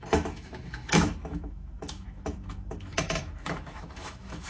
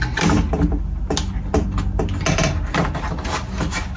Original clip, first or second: second